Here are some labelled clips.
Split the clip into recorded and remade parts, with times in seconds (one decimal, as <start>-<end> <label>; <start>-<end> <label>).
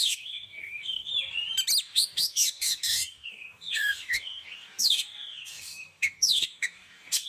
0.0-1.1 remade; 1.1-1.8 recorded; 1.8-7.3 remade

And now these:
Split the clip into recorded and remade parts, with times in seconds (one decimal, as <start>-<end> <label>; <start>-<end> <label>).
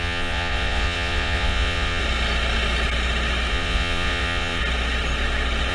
0.0-2.0 remade; 2.0-3.5 recorded; 3.5-4.6 remade; 4.6-5.7 recorded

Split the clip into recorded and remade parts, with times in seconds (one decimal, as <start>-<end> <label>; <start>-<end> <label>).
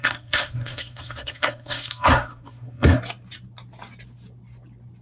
0.0-3.0 remade; 3.0-5.0 recorded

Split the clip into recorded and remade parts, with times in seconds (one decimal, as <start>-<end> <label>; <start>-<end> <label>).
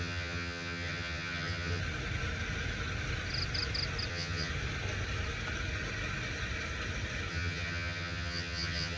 0.0-1.8 remade; 1.8-4.1 recorded; 4.1-4.5 remade; 4.5-7.3 recorded; 7.3-9.0 remade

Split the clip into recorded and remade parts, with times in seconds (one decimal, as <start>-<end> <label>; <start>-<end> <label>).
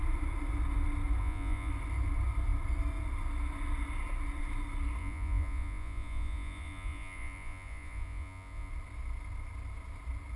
0.0-1.2 recorded; 1.2-1.7 remade; 1.7-5.0 recorded; 5.0-8.7 remade; 8.7-10.4 recorded